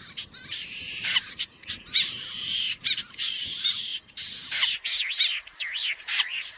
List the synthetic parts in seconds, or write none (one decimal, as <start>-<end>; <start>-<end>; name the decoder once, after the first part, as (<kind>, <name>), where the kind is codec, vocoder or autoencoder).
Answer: 0.0-3.9 (vocoder, BigVGAN v2); 5.9-6.6